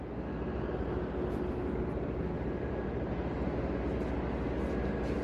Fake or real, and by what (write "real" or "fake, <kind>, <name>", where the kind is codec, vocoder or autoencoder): real